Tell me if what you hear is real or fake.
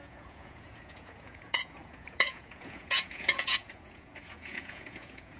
fake